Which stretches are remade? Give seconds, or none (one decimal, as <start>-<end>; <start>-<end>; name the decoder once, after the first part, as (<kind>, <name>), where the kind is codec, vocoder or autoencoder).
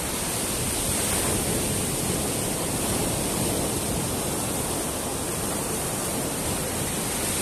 3.0-3.9 (vocoder, BigVGAN v2); 5.1-7.4